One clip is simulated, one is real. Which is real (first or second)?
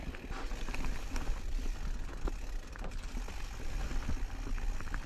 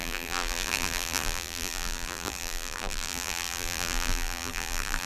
first